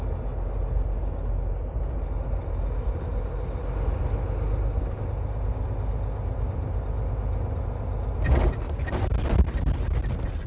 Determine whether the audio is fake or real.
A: real